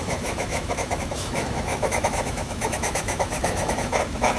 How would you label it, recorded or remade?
remade